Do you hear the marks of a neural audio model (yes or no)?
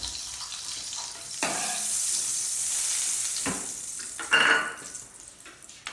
yes